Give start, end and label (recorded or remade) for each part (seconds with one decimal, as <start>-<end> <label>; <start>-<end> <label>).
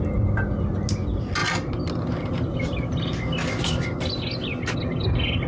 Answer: 0.0-5.5 recorded